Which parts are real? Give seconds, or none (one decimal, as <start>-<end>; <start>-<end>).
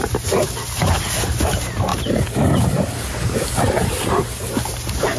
0.0-5.2